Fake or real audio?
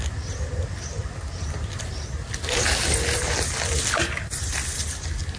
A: real